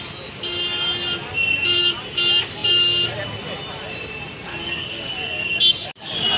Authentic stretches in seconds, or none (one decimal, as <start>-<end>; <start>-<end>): 0.0-4.5